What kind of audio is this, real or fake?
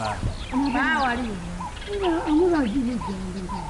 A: real